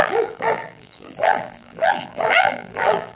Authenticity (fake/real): fake